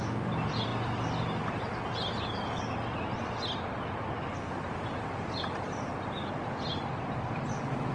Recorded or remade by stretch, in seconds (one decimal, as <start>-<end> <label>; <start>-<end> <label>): 0.0-0.7 remade; 0.7-5.4 recorded; 5.4-7.9 remade